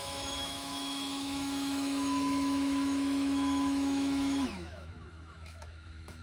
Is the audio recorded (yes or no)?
no